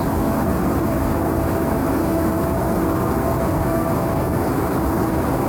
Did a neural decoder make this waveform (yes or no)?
yes